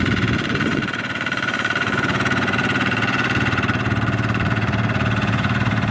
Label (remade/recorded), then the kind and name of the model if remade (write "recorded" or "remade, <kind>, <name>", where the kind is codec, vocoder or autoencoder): remade, vocoder, Vocos